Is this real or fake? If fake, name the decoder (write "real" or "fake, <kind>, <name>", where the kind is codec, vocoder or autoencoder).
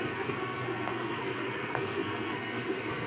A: fake, codec, SNAC